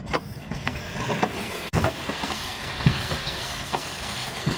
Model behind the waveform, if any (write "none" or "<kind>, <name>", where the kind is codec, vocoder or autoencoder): codec, SNAC